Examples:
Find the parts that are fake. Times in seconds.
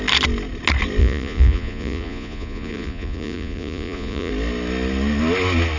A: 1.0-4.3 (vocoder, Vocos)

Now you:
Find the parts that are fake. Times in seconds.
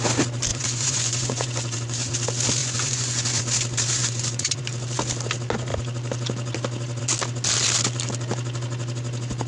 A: 0.5-2.1 (vocoder, Vocos); 2.6-3.4; 4.0-4.6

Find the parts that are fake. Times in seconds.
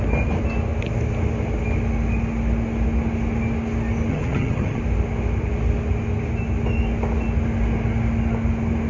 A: 4.1-4.8 (vocoder, HiFi-GAN)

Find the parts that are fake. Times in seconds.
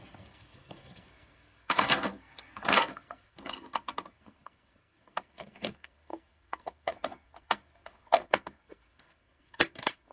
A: 0.0-10.1 (codec, SNAC)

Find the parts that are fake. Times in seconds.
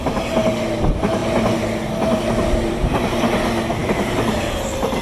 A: 3.8-5.0 (vocoder, BigVGAN v2)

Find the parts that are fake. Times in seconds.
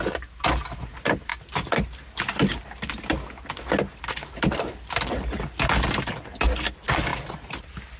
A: none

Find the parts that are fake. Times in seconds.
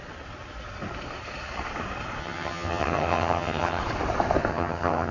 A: 2.2-3.8 (vocoder, HiFi-GAN); 4.5-5.1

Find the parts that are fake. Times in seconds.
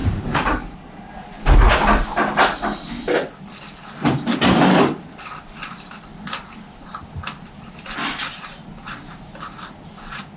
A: 0.0-1.0 (vocoder, BigVGAN v2); 8.6-10.4